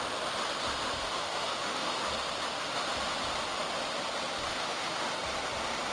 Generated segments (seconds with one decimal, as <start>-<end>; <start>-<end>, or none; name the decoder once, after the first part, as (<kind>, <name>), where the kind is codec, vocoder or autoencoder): 1.0-1.9 (autoencoder, DAC-VAE); 4.4-5.1